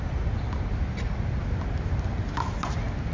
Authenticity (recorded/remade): recorded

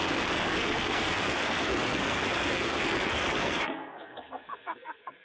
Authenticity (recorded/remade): remade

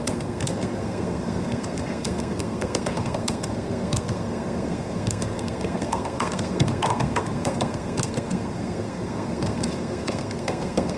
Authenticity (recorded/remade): remade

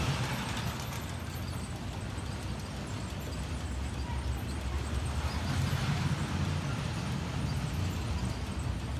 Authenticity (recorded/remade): recorded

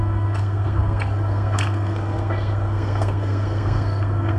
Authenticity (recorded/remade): remade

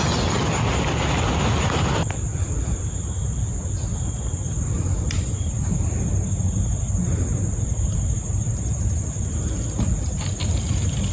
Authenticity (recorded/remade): recorded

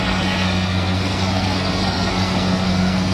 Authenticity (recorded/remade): remade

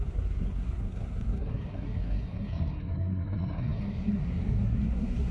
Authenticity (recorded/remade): remade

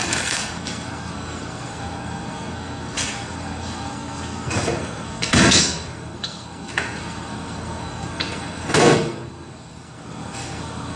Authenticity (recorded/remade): remade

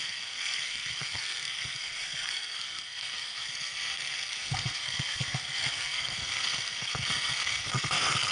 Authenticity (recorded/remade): remade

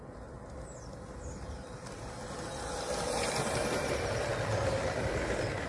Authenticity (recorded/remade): recorded